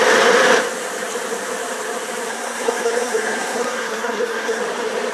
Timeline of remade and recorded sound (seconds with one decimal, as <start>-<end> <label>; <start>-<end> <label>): 0.0-2.3 recorded; 2.3-4.6 remade; 4.6-5.1 recorded